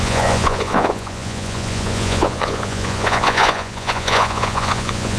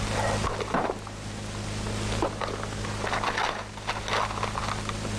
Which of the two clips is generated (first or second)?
first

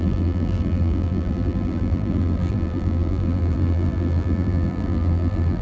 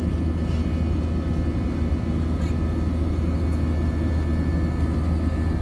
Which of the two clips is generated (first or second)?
first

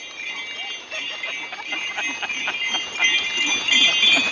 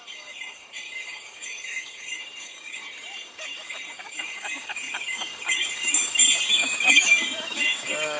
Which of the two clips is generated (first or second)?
second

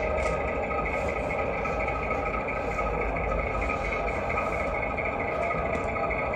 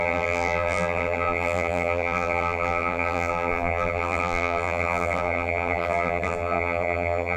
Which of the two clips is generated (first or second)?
second